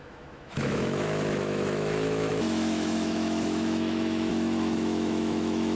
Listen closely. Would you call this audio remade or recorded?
remade